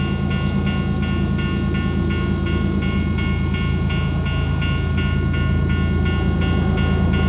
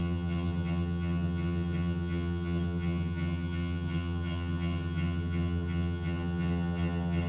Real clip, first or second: first